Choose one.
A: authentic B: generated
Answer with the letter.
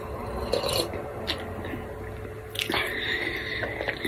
A